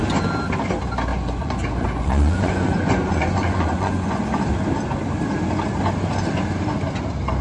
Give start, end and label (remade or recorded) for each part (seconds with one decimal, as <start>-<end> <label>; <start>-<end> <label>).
0.0-1.1 recorded; 1.1-4.2 remade; 4.2-7.4 recorded